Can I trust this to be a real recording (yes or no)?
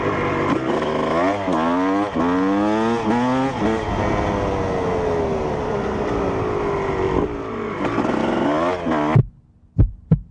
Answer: yes